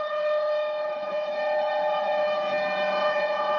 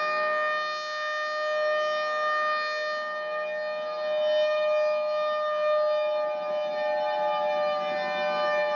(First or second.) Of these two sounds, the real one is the second